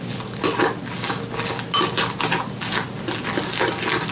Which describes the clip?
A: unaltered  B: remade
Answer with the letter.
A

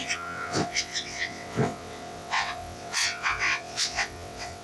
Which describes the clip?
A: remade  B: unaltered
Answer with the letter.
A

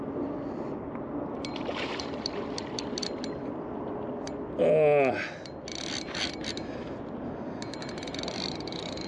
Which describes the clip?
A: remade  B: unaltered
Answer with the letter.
B